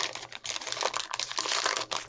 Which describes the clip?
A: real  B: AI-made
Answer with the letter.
A